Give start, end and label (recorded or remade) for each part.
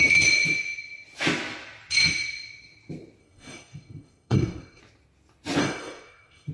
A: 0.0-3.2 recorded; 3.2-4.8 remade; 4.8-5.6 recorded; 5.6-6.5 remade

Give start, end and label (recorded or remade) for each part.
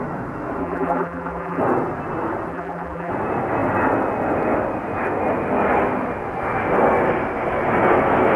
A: 0.0-0.6 recorded; 0.6-1.6 remade; 1.6-2.5 recorded; 2.5-3.1 remade; 3.1-8.4 recorded